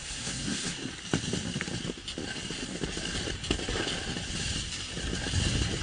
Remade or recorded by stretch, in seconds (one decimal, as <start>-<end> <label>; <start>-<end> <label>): 0.0-0.9 remade; 0.9-5.8 recorded